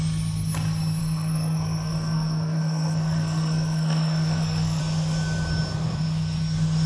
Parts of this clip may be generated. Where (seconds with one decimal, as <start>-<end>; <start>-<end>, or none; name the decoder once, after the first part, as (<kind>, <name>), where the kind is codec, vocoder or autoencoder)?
1.0-4.8 (codec, SNAC)